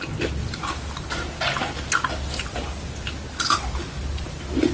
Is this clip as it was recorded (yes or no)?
yes